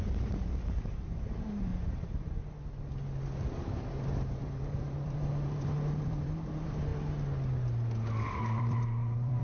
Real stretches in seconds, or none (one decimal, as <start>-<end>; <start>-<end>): 1.7-3.4; 6.9-8.4